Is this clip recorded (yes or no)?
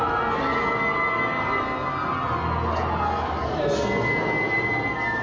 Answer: yes